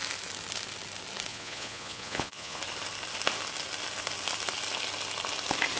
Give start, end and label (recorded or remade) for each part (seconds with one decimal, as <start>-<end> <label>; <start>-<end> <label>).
0.0-1.3 recorded; 1.3-2.6 remade; 2.6-5.8 recorded